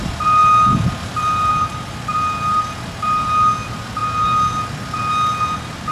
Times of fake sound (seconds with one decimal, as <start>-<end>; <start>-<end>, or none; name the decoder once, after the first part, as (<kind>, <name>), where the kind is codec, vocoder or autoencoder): none